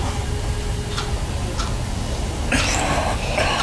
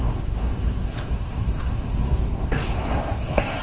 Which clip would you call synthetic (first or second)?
second